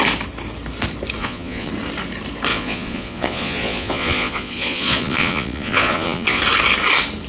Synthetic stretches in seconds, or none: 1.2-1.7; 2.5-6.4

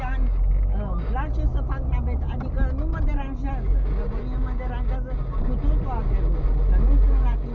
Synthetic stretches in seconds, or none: none

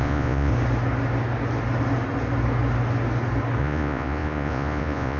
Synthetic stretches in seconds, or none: 0.0-0.5; 3.6-5.2

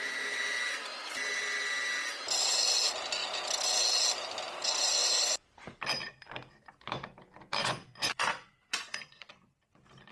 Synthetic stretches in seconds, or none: 7.6-9.3

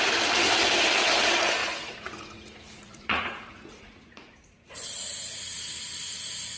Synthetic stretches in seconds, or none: 1.6-5.6